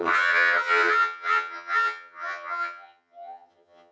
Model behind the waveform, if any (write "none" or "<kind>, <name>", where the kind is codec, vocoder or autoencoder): vocoder, HiFi-GAN